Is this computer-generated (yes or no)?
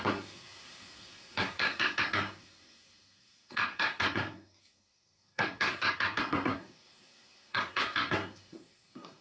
yes